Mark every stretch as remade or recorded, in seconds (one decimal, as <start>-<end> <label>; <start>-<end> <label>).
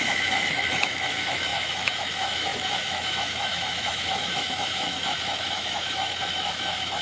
0.0-7.0 remade